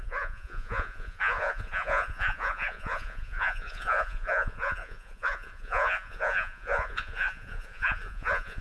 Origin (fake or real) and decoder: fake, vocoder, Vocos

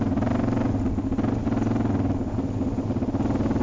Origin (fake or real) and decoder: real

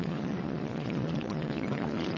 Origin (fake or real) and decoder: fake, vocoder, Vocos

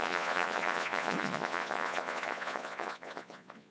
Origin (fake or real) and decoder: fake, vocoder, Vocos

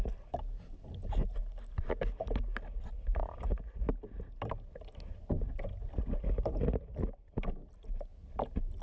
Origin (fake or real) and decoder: real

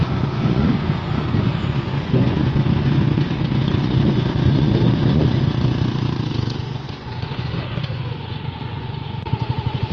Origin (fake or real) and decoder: fake, vocoder, Vocos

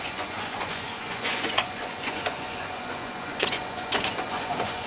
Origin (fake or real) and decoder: fake, vocoder, Vocos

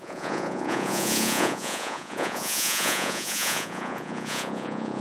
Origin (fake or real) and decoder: fake, vocoder, Vocos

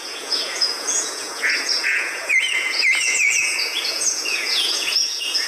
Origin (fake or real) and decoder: fake, vocoder, Vocos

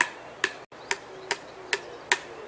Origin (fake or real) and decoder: real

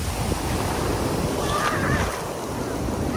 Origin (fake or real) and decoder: real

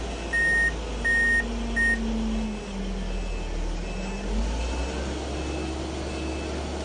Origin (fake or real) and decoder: real